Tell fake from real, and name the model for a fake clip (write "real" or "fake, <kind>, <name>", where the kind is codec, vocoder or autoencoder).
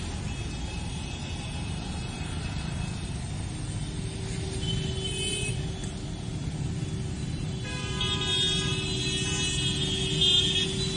real